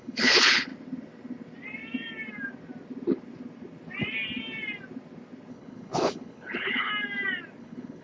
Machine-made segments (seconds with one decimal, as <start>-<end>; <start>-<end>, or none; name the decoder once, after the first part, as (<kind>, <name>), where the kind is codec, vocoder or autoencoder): 0.0-0.7 (codec, HILCodec); 5.5-6.9; 7.6-8.0

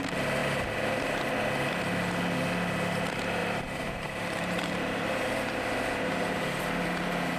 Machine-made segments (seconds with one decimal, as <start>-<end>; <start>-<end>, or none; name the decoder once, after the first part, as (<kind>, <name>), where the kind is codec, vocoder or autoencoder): 3.4-6.6 (vocoder, BigVGAN v2)

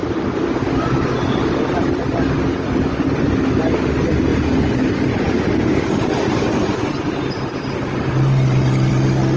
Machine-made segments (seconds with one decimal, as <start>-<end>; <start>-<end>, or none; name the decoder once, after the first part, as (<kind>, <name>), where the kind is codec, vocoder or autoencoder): none

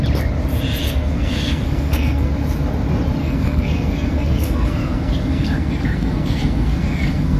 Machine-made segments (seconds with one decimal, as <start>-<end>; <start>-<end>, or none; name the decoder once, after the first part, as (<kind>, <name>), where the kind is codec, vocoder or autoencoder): 0.8-2.3 (codec, SNAC); 3.2-7.4

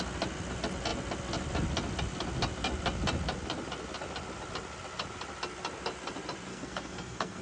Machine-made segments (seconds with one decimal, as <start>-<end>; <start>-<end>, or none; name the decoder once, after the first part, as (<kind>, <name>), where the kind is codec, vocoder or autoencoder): 6.5-7.4 (codec, SNAC)

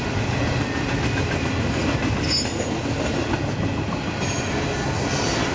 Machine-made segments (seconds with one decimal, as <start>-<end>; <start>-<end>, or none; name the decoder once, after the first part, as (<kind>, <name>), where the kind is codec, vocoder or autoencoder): none

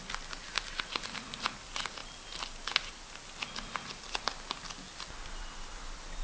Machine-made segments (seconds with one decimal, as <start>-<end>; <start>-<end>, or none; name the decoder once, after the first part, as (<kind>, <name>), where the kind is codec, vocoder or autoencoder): none